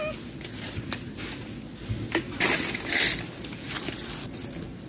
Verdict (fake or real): real